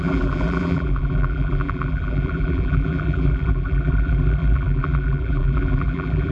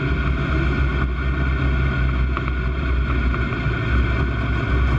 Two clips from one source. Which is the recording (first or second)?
second